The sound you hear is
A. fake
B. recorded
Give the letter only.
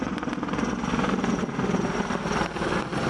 B